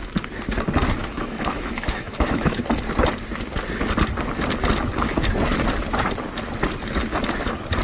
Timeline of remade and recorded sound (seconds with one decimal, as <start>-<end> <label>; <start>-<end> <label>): 0.0-1.0 recorded; 1.0-2.6 remade; 2.6-7.8 recorded

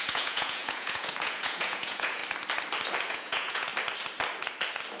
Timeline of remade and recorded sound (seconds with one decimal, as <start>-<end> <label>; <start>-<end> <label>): 0.0-2.2 remade; 2.2-3.1 recorded; 3.1-3.7 remade; 3.7-5.0 recorded

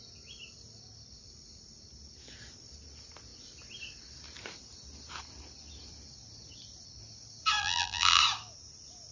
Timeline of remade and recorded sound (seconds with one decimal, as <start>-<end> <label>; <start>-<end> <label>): 0.0-7.6 recorded; 7.6-8.2 remade; 8.2-9.1 recorded

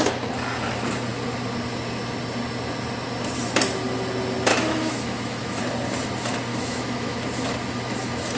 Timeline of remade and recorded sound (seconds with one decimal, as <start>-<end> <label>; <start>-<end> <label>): 0.0-4.5 recorded; 4.5-5.6 remade; 5.6-6.5 recorded; 6.5-7.2 remade; 7.2-8.4 recorded

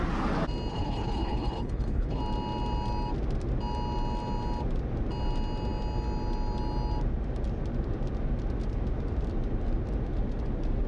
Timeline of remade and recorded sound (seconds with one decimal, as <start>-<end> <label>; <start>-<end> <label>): 0.0-0.7 recorded; 0.7-2.2 remade; 2.2-10.9 recorded